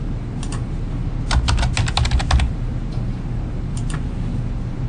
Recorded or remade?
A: recorded